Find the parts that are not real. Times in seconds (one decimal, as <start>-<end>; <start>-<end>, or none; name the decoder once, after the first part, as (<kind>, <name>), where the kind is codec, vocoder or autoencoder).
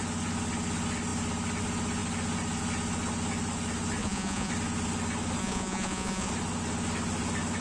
4.0-4.5 (vocoder, Vocos); 5.4-6.3